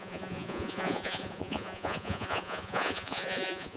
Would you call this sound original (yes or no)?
no